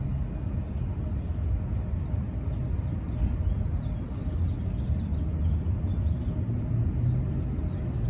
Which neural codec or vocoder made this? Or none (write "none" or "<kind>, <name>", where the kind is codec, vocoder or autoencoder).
none